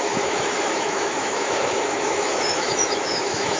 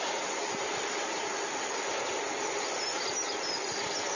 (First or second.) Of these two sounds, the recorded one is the second